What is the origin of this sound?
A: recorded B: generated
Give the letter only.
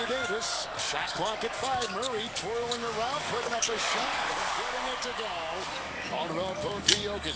B